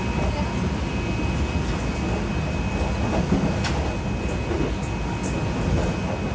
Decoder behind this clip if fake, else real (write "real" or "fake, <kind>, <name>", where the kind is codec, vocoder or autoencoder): real